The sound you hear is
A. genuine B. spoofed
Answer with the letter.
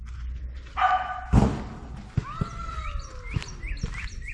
A